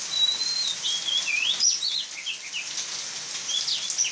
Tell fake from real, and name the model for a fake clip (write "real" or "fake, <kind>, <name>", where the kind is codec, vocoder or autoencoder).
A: real